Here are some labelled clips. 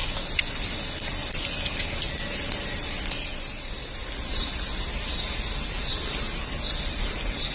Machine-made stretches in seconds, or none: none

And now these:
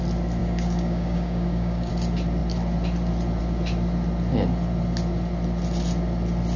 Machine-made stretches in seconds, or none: 0.4-1.9 (codec, DAC)

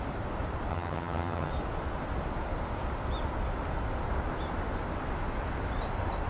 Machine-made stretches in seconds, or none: 0.7-1.5 (vocoder, HiFi-GAN)

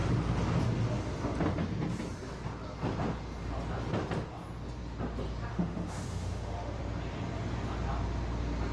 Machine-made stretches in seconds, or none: 5.5-6.8 (autoencoder, DAC-VAE)